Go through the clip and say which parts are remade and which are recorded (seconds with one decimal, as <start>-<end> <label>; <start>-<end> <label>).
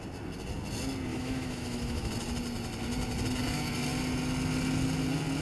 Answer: 0.0-1.1 recorded; 1.1-2.1 remade; 2.1-5.4 recorded